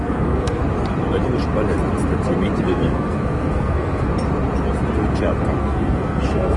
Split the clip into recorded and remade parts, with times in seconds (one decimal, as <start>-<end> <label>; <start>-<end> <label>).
0.0-0.6 remade; 0.6-2.6 recorded; 2.6-4.1 remade; 4.1-5.6 recorded; 5.6-6.6 remade